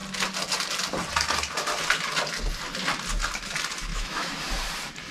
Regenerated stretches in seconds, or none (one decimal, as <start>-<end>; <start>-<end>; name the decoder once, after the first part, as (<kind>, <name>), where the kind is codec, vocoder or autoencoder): 3.9-4.4 (autoencoder, DAC-VAE)